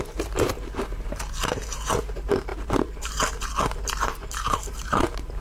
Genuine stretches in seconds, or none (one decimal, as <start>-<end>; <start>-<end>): none